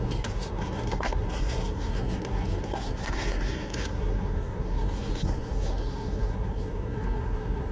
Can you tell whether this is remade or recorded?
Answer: remade